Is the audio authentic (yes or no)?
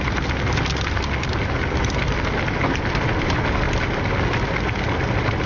yes